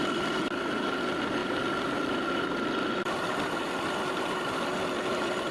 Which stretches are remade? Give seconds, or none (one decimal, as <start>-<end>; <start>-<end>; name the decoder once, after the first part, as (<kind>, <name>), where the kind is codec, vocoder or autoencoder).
1.4-4.7 (vocoder, BigVGAN v2)

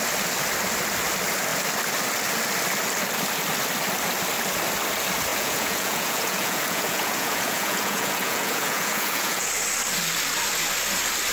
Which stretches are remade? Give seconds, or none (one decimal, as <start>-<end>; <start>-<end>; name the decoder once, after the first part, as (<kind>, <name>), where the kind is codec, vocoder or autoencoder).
5.3-9.5 (vocoder, Vocos)

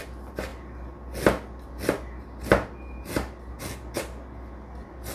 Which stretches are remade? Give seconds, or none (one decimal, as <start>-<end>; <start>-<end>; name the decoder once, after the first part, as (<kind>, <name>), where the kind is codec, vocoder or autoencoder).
none

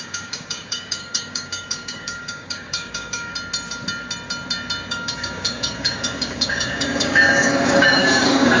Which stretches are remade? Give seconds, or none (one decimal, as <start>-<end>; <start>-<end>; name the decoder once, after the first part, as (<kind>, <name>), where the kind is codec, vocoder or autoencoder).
0.0-3.3 (codec, DAC); 4.9-8.6

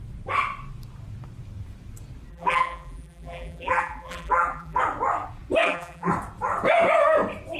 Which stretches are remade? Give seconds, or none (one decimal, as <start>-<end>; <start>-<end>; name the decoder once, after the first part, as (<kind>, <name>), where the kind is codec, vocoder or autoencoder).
2.3-4.8 (vocoder, BigVGAN v2); 5.6-6.1